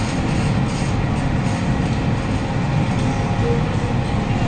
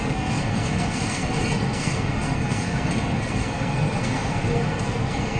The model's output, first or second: second